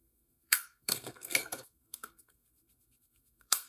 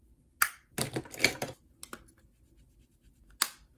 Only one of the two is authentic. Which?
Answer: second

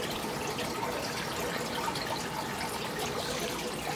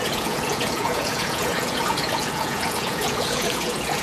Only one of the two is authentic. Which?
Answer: first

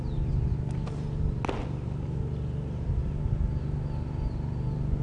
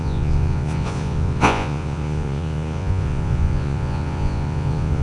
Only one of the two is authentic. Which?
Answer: first